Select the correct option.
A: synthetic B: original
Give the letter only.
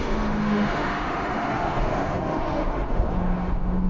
A